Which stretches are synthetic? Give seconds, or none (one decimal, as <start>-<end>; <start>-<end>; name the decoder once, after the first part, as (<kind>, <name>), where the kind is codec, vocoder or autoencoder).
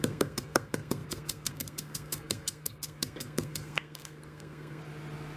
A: 0.0-4.8 (codec, SNAC)